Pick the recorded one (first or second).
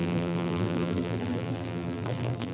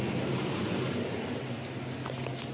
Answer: second